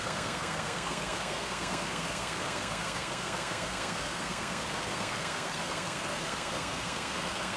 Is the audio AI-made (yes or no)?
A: yes